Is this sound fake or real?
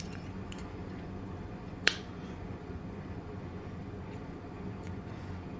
fake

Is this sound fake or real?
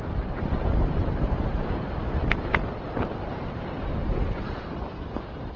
real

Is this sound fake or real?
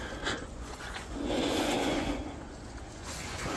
fake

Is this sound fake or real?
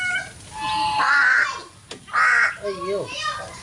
real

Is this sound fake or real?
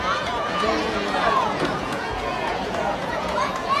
fake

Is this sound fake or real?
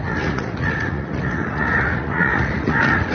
fake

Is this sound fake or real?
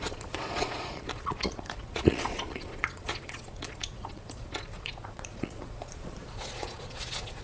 fake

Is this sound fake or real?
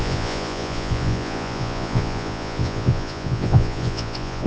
fake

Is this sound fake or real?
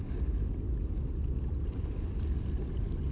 real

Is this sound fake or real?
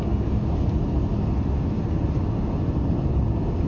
real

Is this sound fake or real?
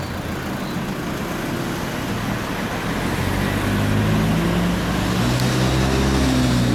real